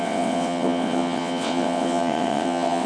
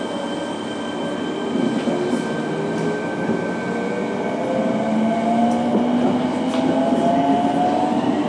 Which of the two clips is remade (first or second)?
first